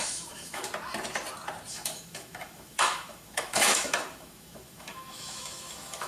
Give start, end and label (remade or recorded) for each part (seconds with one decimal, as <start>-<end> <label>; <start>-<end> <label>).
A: 0.0-0.7 remade; 0.7-1.7 recorded; 1.7-6.1 remade